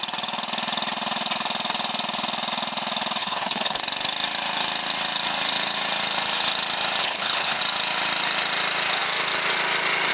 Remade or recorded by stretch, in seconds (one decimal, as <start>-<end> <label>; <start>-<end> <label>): 0.0-3.2 recorded; 3.2-3.8 remade; 3.8-7.0 recorded; 7.0-7.6 remade; 7.6-10.1 recorded